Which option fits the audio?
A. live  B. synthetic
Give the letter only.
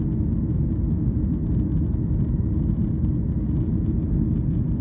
A